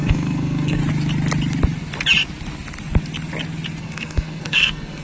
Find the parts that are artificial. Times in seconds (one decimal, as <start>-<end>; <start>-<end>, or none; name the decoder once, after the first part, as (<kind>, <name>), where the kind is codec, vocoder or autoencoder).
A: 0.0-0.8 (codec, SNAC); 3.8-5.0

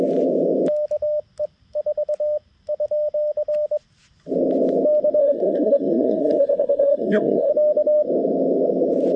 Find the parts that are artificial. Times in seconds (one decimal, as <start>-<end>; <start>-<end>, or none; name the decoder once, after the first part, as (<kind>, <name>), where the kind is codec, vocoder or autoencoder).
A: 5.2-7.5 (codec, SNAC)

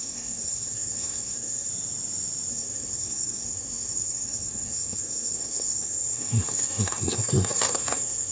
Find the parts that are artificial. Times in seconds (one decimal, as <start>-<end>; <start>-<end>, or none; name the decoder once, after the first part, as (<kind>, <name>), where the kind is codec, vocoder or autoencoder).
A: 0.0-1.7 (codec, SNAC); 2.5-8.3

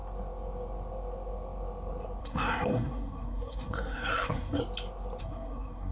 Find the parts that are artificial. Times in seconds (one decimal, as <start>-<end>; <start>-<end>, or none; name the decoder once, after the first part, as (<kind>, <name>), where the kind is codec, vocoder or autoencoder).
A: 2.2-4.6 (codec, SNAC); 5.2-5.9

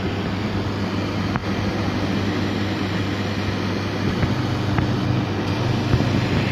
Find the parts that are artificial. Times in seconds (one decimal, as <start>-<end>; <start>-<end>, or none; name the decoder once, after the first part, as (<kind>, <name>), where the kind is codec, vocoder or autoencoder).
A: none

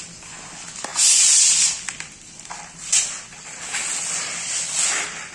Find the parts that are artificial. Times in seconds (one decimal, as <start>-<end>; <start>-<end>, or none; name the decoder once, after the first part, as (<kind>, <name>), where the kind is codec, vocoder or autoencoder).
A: none

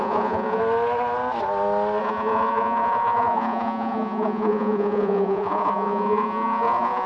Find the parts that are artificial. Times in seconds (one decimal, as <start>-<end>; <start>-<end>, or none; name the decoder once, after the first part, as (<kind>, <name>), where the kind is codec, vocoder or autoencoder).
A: 0.0-0.6 (vocoder, Vocos); 2.0-7.1